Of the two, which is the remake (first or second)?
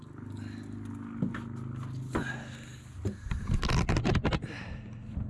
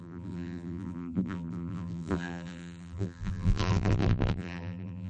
second